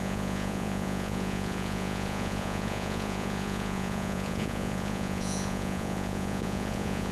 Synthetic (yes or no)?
yes